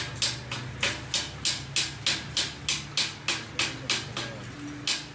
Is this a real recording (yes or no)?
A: yes